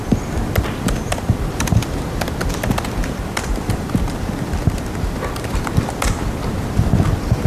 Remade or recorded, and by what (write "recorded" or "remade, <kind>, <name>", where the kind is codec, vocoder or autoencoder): recorded